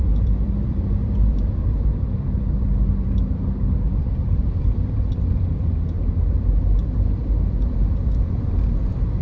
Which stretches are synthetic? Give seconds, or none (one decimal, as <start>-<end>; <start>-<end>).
0.0-9.2